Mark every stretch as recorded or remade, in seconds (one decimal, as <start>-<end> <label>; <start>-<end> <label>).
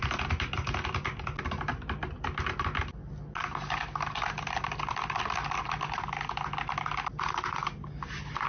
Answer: 0.0-8.5 recorded